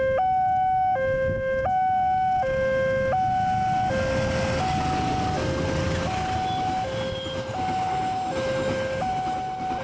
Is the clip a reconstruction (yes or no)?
no